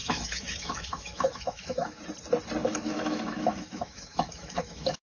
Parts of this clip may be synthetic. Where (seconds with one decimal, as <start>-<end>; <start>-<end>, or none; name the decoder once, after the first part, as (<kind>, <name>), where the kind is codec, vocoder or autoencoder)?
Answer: 0.0-2.0 (autoencoder, DAC-VAE); 2.6-5.0